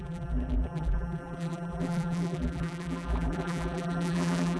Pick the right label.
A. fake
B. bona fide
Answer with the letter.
A